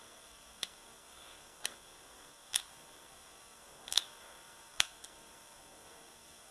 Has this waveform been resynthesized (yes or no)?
yes